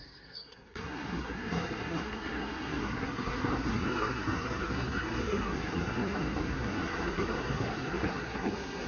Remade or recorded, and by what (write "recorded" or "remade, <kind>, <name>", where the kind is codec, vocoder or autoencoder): remade, codec, SNAC